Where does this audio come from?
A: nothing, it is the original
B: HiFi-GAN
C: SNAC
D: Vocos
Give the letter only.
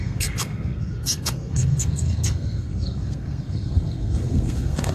C